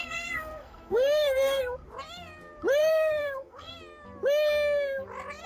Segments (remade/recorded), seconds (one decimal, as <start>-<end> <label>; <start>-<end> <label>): 0.0-1.6 remade; 1.6-2.8 recorded; 2.8-3.7 remade; 3.7-5.5 recorded